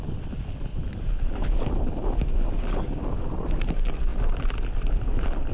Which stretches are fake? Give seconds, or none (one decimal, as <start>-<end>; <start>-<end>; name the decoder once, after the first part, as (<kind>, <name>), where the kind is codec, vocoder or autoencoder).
0.7-2.2 (vocoder, BigVGAN v2); 4.1-4.9